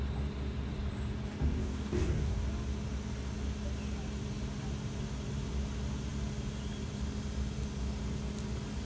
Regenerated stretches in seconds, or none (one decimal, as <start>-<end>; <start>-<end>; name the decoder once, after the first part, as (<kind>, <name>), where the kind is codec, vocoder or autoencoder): 1.6-2.4 (codec, DAC)